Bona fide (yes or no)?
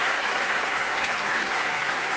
no